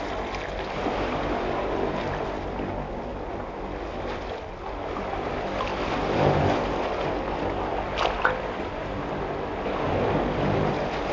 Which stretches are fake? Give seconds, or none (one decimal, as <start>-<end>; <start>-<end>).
none